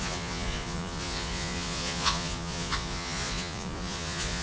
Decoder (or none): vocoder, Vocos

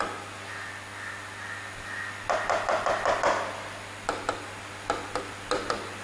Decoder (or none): none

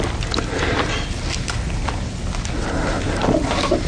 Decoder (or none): none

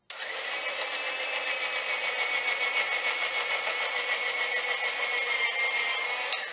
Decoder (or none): none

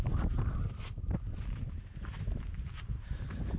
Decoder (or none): vocoder, BigVGAN v2